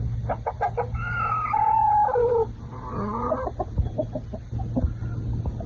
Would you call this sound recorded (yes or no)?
yes